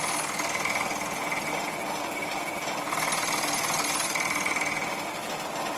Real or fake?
real